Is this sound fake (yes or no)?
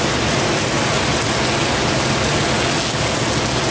no